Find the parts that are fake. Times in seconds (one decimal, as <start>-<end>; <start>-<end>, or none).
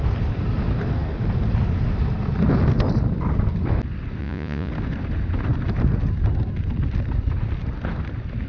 4.2-4.7